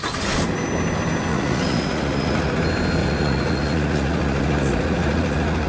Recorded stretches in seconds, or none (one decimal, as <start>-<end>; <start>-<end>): 0.0-1.3; 2.6-3.0